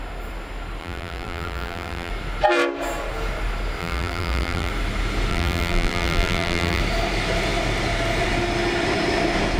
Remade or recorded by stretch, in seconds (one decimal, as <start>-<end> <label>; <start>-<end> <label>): 0.0-0.8 recorded; 0.8-2.1 remade; 2.1-3.8 recorded; 3.8-4.7 remade; 4.7-5.3 recorded; 5.3-6.8 remade; 6.8-9.6 recorded